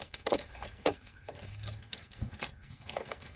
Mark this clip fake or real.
fake